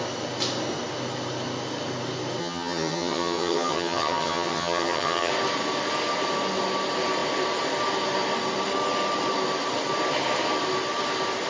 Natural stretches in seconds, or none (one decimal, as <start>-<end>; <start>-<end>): 0.0-2.4; 5.3-11.5

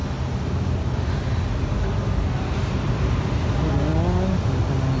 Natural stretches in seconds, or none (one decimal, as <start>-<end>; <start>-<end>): 0.0-5.0

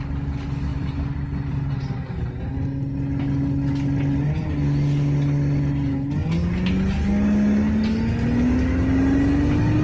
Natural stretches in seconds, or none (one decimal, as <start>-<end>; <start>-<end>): 0.0-0.7; 1.7-9.8

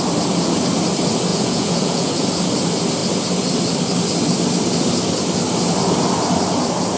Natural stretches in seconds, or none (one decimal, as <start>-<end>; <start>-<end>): 0.0-1.3; 2.2-7.0

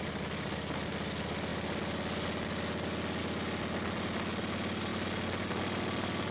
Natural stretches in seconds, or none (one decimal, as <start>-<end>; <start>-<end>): 0.0-6.3

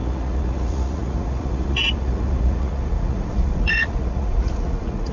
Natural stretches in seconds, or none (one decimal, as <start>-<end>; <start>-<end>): none

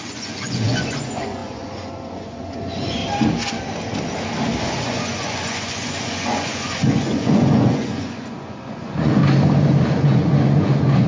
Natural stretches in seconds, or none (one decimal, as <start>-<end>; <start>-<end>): 3.0-4.6; 9.2-9.9

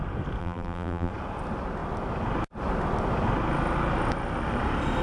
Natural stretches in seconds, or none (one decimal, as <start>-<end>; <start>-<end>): 0.0-0.4; 1.1-5.0